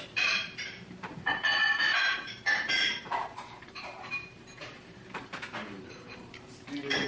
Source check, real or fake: fake